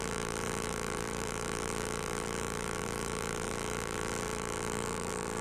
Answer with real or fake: fake